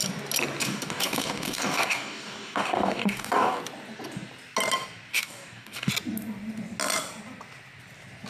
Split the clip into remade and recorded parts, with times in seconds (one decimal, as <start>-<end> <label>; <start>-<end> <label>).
0.0-0.6 recorded; 0.6-3.6 remade; 3.6-5.1 recorded; 5.1-5.9 remade; 5.9-8.3 recorded